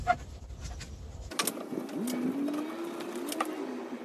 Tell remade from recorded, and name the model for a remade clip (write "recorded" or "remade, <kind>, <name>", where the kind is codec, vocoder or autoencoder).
recorded